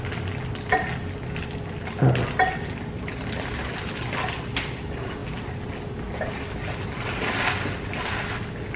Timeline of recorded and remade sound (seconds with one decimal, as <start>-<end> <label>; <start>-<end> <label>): 0.0-8.8 recorded